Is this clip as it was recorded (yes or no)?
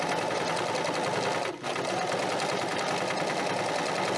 yes